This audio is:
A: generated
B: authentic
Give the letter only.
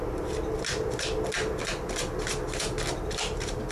B